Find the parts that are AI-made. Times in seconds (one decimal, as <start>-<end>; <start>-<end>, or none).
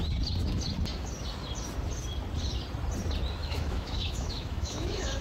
3.4-5.2